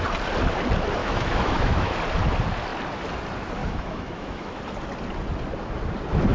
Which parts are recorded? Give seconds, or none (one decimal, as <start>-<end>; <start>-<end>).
0.0-1.0; 2.0-3.6; 4.6-6.3